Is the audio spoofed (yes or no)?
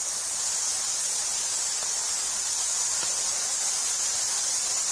no